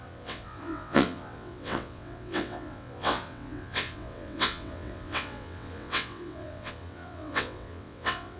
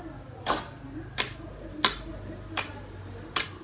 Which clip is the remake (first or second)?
first